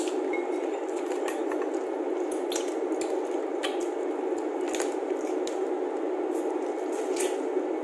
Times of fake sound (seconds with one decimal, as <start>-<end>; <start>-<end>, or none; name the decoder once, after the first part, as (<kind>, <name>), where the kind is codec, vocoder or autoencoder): none